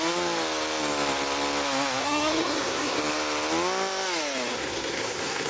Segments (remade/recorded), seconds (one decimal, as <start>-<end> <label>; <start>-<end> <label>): 0.0-2.0 recorded; 2.0-3.0 remade; 3.0-4.5 recorded; 4.5-5.5 remade